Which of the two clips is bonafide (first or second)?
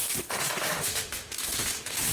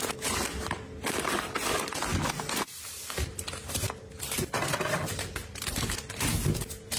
second